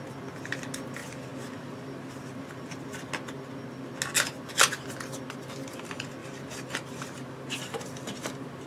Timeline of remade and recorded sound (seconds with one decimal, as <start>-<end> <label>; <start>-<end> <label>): 0.0-1.0 recorded; 1.0-2.4 remade; 2.4-6.2 recorded; 6.2-8.7 remade